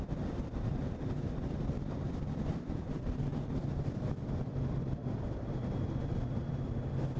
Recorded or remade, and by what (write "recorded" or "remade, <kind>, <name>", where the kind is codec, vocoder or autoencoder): remade, vocoder, BigVGAN v2